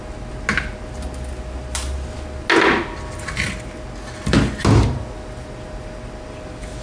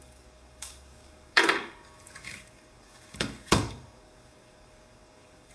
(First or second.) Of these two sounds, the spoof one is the second